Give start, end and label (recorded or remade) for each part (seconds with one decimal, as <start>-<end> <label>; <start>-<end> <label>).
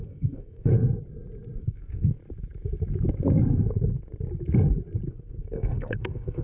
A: 0.0-0.7 remade; 0.7-1.6 recorded; 1.6-2.2 remade; 2.2-5.1 recorded; 5.1-6.4 remade